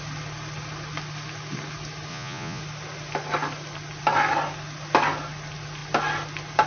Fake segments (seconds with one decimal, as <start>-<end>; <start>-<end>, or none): 2.1-2.6